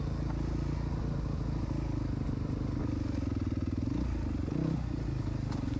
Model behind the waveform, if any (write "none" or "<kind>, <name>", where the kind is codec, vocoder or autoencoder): none